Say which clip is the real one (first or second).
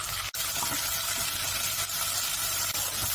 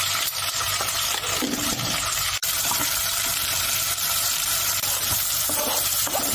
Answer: first